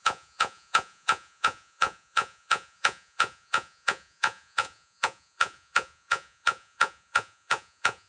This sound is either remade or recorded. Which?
remade